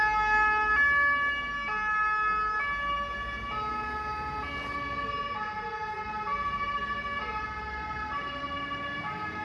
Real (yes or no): yes